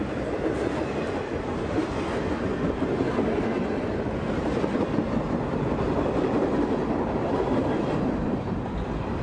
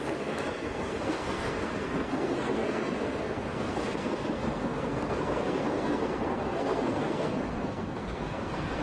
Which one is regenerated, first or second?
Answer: second